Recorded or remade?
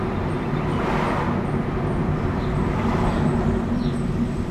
recorded